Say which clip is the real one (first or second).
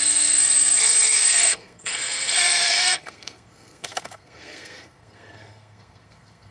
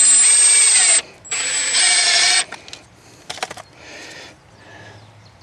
second